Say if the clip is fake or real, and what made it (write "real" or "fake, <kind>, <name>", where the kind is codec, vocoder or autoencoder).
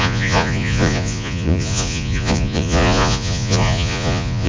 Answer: fake, vocoder, Vocos